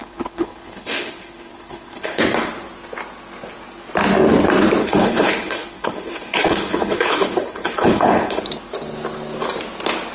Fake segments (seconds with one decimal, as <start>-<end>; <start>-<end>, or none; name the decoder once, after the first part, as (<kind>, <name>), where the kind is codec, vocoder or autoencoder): 0.0-2.2 (codec, HILCodec); 4.8-8.4

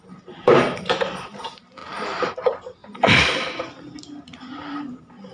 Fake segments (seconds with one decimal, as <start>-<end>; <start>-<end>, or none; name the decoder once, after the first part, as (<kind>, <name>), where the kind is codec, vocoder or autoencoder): 0.0-2.8 (vocoder, BigVGAN v2); 3.8-5.3

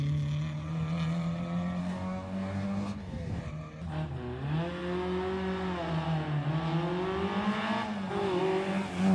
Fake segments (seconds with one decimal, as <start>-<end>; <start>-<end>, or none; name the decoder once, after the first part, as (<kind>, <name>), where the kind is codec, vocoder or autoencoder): 1.8-3.4 (codec, DAC)

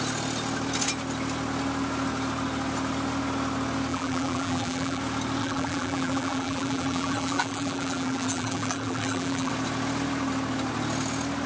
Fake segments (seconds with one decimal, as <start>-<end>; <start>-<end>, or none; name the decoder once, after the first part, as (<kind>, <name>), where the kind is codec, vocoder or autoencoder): 3.9-5.0 (vocoder, BigVGAN v2); 5.4-9.5

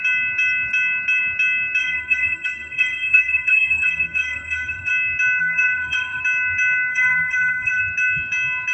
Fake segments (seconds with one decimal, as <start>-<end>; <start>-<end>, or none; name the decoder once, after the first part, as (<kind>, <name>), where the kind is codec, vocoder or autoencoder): 1.8-4.9 (codec, SNAC); 5.4-6.2; 6.9-7.8

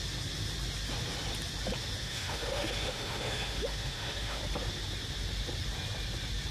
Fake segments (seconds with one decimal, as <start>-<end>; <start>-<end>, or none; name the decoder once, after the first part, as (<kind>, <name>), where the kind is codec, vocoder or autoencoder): 2.0-4.4 (autoencoder, DAC-VAE)

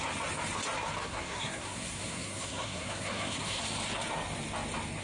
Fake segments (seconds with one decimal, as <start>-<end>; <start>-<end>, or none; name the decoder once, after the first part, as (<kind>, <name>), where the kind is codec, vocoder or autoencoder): 1.0-3.6 (codec, SNAC)